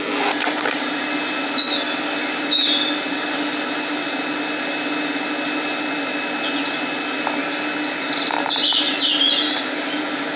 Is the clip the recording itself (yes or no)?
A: yes